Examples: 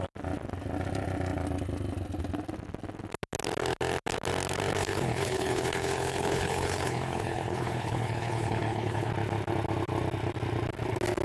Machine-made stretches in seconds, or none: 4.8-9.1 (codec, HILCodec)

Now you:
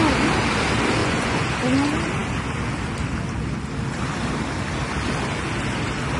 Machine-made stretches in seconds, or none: 1.0-1.5 (vocoder, Vocos)

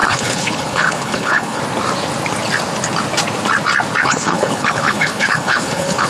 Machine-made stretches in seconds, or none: 0.0-1.6 (codec, HILCodec); 4.0-6.1